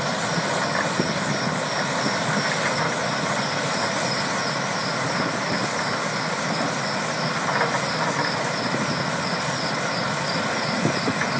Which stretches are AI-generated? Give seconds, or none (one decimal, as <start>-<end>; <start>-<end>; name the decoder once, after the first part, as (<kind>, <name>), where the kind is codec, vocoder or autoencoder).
none